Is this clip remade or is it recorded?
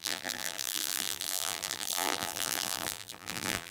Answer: remade